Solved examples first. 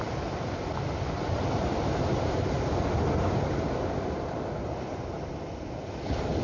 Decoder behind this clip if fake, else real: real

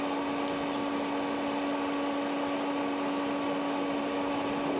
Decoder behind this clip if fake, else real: real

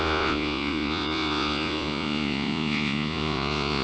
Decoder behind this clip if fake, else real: fake, vocoder, Vocos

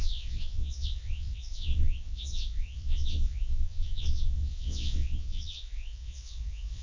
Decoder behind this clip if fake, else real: fake, vocoder, WaveNeXt